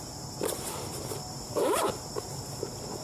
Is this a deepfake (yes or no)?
yes